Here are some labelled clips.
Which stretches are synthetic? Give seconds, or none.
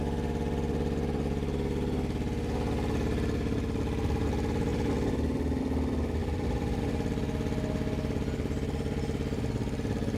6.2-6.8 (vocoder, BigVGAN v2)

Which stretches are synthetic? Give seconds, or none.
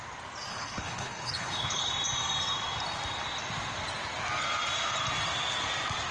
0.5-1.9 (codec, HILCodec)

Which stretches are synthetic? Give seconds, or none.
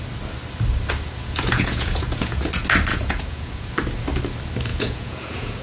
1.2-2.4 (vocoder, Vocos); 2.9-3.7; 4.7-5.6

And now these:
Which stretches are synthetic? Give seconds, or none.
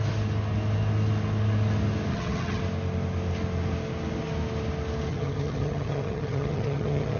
2.1-2.6 (vocoder, HiFi-GAN); 5.1-7.2